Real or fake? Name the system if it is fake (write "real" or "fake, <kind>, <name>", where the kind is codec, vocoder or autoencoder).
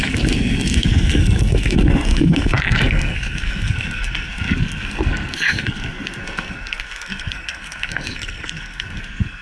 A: fake, codec, SNAC